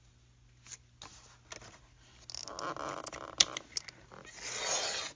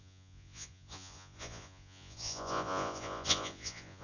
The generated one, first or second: second